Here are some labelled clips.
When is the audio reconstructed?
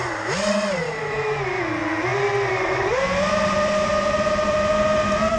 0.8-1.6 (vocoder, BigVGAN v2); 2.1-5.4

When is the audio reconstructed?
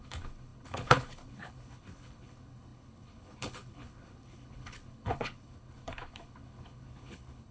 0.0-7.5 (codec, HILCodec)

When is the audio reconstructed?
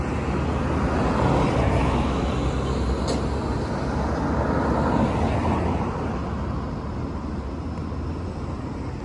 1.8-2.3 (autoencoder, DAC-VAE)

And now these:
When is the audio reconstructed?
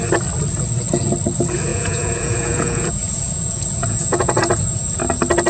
1.7-5.0 (vocoder, Vocos)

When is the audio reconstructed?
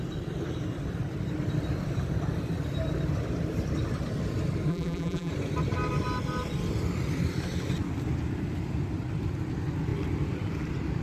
4.7-5.3 (vocoder, BigVGAN v2)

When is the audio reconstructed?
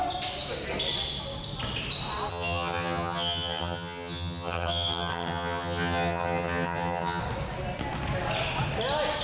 2.3-7.2 (vocoder, HiFi-GAN)